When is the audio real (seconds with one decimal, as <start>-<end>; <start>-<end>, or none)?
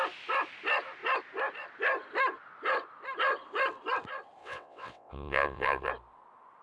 0.0-4.4; 5.9-6.6